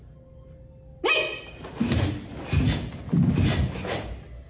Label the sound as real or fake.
real